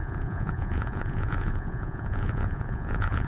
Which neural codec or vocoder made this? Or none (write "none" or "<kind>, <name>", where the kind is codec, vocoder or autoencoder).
vocoder, Vocos